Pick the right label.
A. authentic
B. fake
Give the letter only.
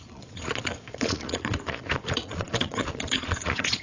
B